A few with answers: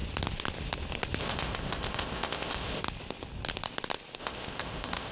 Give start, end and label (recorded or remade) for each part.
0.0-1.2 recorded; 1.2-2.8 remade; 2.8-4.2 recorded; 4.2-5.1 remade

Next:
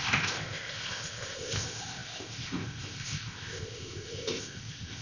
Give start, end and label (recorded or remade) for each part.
0.0-5.0 remade

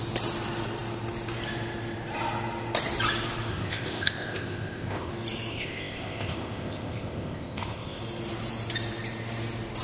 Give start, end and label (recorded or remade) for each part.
0.0-3.5 recorded; 3.5-5.1 remade; 5.1-5.5 recorded; 5.5-8.0 remade; 8.0-9.8 recorded

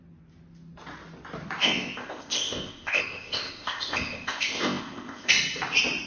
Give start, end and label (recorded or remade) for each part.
0.0-1.6 recorded; 1.6-5.3 remade; 5.3-6.1 recorded

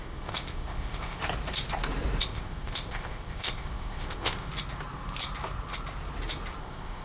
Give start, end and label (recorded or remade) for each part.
0.0-1.2 remade; 1.2-2.2 recorded; 2.2-4.5 remade; 4.5-6.6 recorded; 6.6-7.0 remade

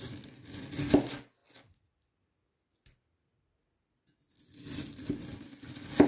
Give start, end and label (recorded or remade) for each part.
0.0-6.1 recorded